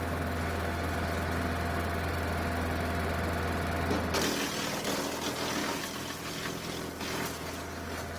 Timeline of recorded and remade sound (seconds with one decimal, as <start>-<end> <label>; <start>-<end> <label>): 0.0-5.6 recorded; 5.6-6.3 remade; 6.3-8.2 recorded